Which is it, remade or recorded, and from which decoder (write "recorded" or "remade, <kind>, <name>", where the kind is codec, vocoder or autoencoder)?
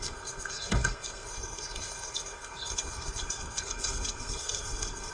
remade, codec, SNAC